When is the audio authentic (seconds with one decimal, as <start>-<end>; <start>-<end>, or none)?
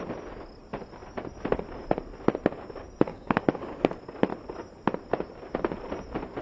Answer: 0.0-3.1; 3.8-6.4